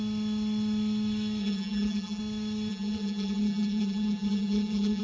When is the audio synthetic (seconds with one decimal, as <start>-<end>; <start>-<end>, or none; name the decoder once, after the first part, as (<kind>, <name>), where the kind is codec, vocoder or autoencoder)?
1.4-2.2 (vocoder, BigVGAN v2); 2.7-5.0